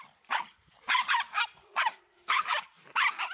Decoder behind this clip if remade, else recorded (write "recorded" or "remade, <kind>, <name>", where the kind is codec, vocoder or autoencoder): remade, vocoder, BigVGAN v2